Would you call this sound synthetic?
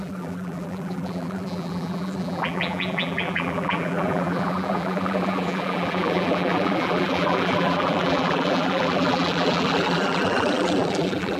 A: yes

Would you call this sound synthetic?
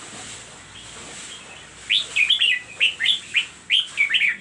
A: no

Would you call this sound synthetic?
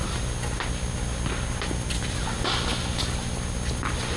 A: no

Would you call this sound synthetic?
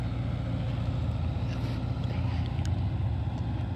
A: no